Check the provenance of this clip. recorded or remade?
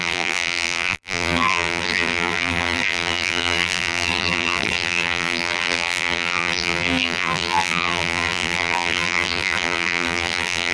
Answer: remade